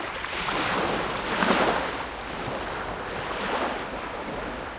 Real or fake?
real